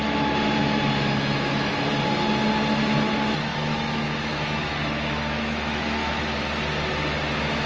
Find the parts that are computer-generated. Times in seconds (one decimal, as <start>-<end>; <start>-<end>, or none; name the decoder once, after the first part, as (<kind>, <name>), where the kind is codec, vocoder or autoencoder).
0.6-1.9 (autoencoder, DAC-VAE); 3.5-6.2